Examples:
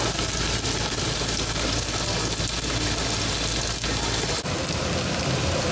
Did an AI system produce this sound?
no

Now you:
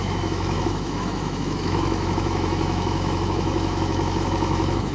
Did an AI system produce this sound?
yes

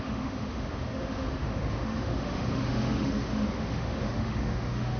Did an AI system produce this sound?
yes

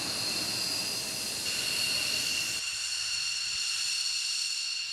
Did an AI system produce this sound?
no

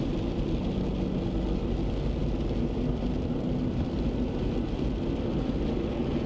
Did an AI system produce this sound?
no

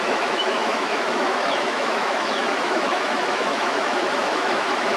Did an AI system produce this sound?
yes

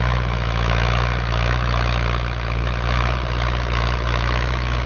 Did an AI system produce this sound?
yes